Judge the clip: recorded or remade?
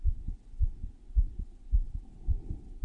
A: recorded